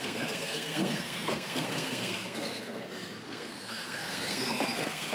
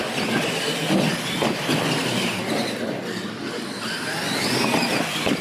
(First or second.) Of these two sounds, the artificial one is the first